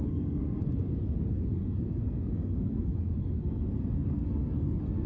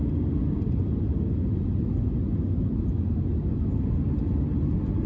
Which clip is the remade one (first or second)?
first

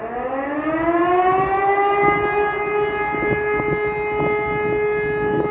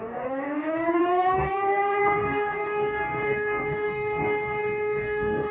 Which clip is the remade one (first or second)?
second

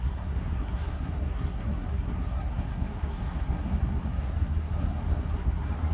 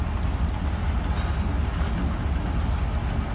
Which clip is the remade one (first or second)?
first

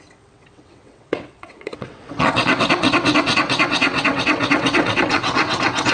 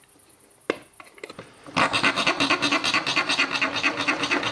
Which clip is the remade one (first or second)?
first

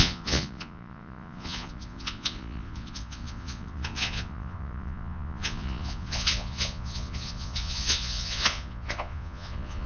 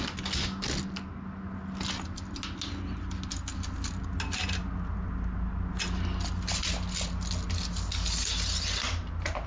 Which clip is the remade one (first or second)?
first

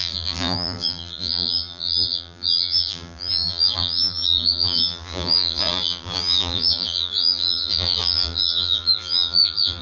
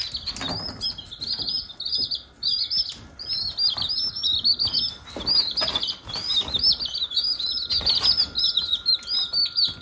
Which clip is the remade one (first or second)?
first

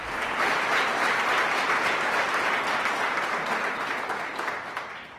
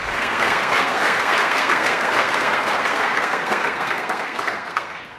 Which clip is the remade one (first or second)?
second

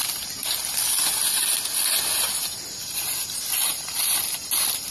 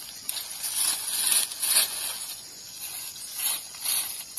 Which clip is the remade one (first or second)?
second